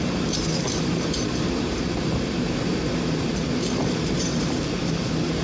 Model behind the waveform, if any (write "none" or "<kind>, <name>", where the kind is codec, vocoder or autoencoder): vocoder, BigVGAN v2